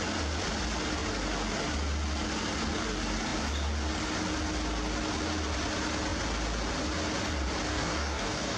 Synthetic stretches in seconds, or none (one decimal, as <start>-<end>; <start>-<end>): 7.7-8.6